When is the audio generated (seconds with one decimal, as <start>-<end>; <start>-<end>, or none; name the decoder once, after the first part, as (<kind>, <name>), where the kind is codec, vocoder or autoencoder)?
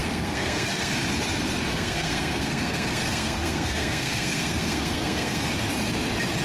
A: 0.0-0.9 (codec, SNAC); 1.7-5.5